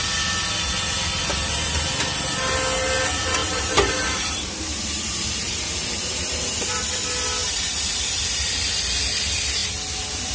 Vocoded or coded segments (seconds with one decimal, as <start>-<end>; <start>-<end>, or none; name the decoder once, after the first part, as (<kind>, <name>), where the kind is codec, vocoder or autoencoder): 3.4-7.0 (vocoder, BigVGAN v2); 7.4-8.2

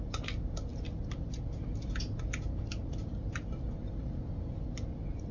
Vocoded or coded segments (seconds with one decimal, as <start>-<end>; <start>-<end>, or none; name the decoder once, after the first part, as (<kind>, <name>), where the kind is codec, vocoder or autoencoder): none

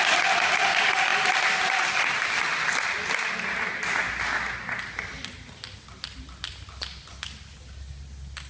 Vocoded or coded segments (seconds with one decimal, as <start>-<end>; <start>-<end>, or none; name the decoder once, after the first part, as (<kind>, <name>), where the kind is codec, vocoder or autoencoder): none

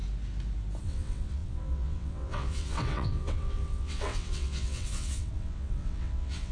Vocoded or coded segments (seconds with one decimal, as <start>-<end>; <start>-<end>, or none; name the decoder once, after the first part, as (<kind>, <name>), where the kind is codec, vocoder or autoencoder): 0.8-6.5 (vocoder, WaveNeXt)

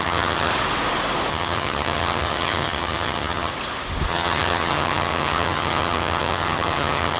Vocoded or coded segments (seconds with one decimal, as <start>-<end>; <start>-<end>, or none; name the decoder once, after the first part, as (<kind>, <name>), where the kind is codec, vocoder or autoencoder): 0.0-0.5 (vocoder, HiFi-GAN); 1.3-3.5; 4.1-7.2

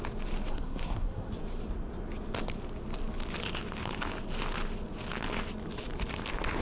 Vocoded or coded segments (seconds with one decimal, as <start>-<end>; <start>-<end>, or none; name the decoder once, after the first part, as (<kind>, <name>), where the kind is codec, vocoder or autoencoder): 0.5-1.3 (codec, SNAC)

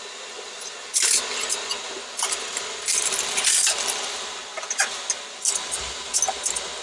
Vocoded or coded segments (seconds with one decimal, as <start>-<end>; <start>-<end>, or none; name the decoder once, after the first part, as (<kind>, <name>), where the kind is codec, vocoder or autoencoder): none

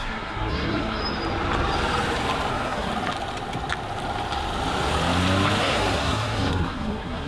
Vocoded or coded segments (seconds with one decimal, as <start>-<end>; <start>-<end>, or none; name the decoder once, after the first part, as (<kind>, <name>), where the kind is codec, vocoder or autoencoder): 0.0-1.0 (codec, SNAC); 2.5-2.9; 5.6-7.3